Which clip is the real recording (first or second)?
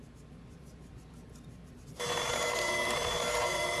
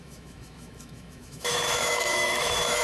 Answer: first